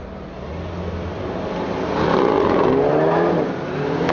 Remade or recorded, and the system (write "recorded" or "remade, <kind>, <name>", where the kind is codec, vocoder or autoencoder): recorded